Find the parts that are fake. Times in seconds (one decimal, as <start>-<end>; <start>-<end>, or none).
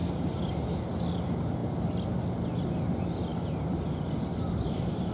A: none